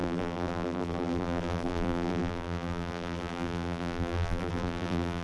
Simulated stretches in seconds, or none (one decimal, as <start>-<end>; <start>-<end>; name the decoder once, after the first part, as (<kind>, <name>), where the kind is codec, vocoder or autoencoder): 0.0-5.2 (vocoder, BigVGAN v2)